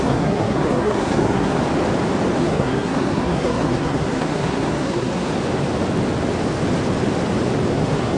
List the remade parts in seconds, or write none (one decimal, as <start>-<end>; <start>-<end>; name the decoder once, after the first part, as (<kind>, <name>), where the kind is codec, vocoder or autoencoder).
0.0-1.6 (codec, SNAC); 2.4-5.3; 7.7-8.2